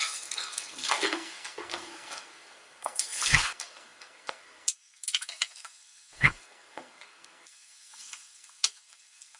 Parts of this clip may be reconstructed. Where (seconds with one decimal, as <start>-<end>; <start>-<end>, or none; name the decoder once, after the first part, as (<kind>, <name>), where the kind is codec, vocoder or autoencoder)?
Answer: 0.0-9.4 (codec, SNAC)